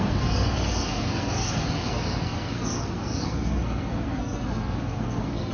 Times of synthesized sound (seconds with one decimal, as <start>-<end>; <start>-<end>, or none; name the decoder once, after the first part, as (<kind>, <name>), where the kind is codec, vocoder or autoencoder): 0.0-5.5 (codec, SNAC)